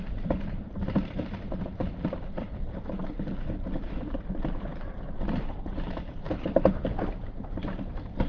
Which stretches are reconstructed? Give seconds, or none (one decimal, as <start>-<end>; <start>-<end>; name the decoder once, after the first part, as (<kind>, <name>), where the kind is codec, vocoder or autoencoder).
0.0-4.7 (vocoder, BigVGAN v2); 5.4-8.3